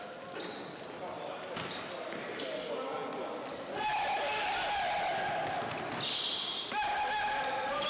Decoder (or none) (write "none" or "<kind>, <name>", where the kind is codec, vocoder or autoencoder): none